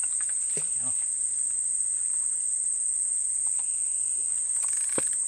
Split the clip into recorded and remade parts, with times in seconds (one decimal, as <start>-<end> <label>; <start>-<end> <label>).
0.0-5.3 recorded